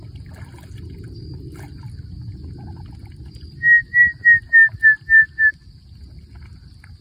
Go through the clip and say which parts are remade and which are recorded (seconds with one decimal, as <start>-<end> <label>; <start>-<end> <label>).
0.0-7.0 recorded